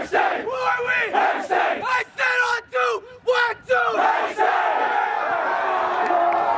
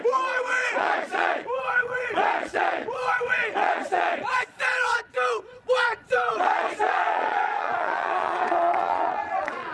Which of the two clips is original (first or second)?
first